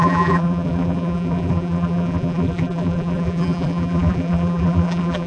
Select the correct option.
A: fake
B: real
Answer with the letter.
A